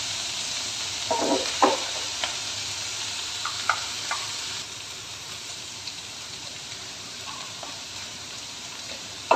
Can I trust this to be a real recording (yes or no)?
no